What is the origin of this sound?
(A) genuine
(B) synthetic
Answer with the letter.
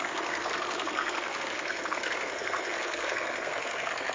B